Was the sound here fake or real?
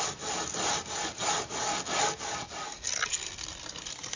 real